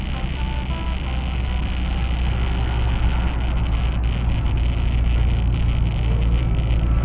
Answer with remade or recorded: recorded